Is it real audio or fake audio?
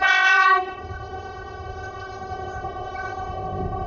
fake